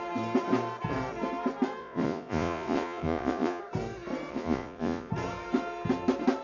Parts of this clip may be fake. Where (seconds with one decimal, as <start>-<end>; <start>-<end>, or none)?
1.8-3.6; 4.3-5.1